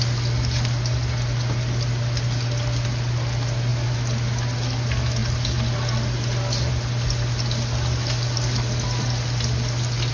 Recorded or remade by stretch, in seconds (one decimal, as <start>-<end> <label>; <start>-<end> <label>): 0.0-10.1 recorded